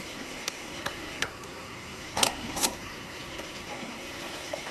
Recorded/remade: remade